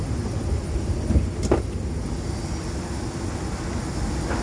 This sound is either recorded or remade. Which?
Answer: recorded